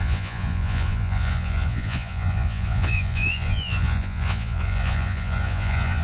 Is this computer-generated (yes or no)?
yes